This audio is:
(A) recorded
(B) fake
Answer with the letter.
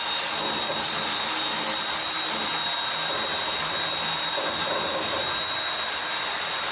A